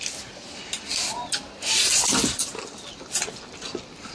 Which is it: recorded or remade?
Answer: recorded